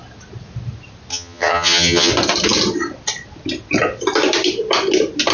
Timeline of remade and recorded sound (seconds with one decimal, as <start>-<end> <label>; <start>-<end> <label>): 0.0-1.1 recorded; 1.1-2.1 remade; 2.1-5.3 recorded